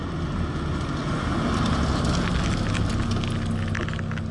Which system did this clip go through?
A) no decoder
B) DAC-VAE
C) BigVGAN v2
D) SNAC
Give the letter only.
A